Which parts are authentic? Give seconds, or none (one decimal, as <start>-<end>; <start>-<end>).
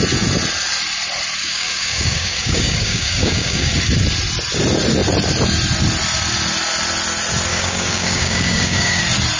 0.0-1.4; 3.7-7.5; 9.0-9.4